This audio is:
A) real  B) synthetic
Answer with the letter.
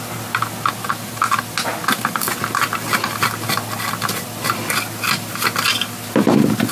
A